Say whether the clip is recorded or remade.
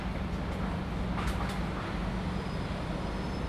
recorded